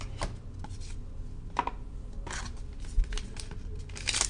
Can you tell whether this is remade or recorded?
recorded